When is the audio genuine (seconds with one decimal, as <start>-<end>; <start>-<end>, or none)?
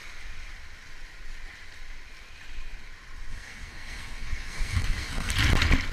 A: 0.0-3.3; 5.3-5.9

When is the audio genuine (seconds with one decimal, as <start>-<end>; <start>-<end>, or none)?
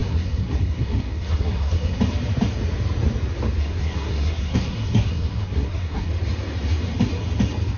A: 2.0-3.6; 6.1-7.8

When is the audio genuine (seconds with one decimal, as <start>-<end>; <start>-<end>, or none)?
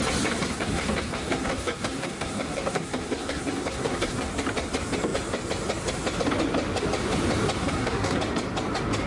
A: 0.0-0.4; 4.3-7.6; 8.2-9.1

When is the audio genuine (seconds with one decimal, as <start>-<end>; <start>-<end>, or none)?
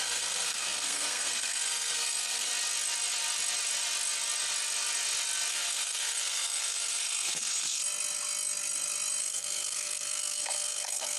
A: 2.5-5.5; 7.8-9.2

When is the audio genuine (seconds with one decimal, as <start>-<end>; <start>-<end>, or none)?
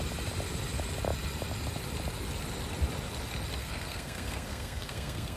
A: 0.0-3.6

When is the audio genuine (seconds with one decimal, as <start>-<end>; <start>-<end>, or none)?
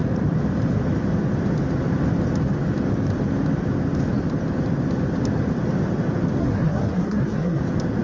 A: 0.0-6.4; 7.6-8.0